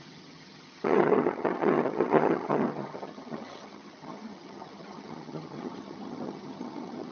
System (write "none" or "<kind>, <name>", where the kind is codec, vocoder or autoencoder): vocoder, HiFi-GAN